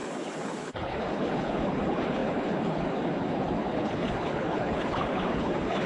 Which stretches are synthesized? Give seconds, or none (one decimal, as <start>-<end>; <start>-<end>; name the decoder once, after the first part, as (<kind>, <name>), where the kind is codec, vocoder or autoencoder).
0.0-5.9 (codec, HILCodec)